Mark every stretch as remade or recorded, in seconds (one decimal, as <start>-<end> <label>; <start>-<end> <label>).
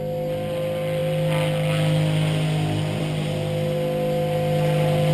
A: 0.0-5.1 recorded